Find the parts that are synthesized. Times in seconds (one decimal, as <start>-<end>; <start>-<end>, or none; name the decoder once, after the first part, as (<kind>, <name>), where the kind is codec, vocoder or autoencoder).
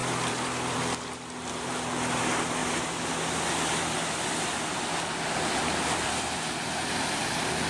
0.0-0.8 (vocoder, BigVGAN v2); 2.6-5.5